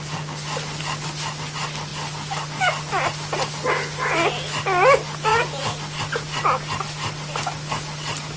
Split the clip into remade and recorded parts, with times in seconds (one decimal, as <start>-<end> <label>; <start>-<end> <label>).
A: 0.0-8.4 recorded